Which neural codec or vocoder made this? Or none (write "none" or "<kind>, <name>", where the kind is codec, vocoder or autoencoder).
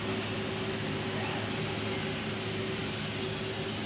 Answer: none